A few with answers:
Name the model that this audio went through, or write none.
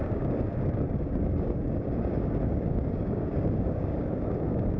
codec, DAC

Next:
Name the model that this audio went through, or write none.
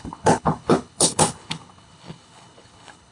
codec, HILCodec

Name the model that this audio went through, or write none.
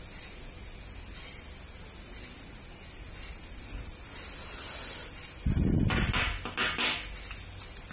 none